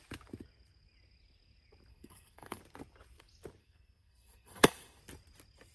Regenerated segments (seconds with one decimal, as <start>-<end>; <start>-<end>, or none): 1.9-2.6; 3.6-5.0